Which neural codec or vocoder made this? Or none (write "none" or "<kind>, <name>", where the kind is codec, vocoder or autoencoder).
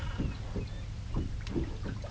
none